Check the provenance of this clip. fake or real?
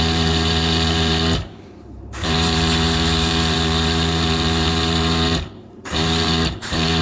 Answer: fake